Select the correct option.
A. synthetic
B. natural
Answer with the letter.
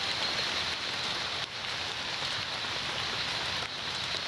B